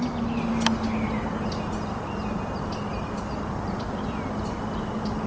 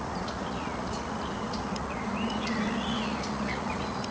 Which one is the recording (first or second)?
first